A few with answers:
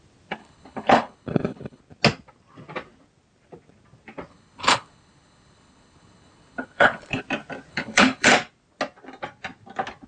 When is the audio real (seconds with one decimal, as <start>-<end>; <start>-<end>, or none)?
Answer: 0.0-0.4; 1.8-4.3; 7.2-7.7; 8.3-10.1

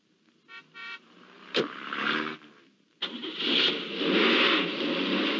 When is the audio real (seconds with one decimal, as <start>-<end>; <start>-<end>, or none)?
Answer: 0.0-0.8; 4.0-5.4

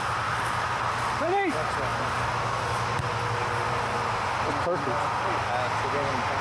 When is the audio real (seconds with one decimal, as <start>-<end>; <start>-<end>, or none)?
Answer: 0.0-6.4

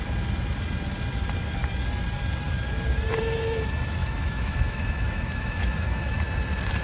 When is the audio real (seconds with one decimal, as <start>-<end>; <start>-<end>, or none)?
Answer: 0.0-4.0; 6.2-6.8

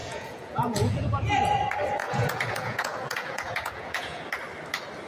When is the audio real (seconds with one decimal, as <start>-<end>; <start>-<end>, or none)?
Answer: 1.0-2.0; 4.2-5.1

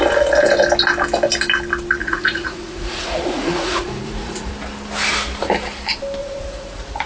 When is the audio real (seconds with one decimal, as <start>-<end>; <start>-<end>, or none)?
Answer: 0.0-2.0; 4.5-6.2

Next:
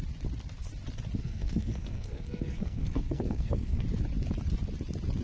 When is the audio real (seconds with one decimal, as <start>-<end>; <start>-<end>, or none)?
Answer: 0.0-1.2; 3.8-5.2